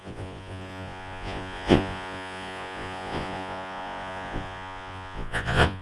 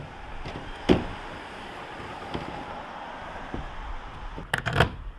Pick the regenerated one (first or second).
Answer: first